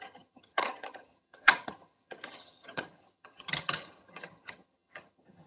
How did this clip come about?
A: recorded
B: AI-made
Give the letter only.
B